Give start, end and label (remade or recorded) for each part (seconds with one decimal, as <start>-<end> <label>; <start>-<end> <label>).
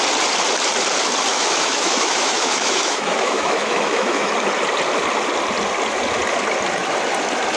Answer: 0.0-1.3 recorded; 1.3-4.3 remade; 4.3-7.6 recorded